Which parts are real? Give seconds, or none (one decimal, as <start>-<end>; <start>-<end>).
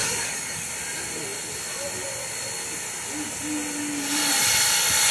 0.7-5.1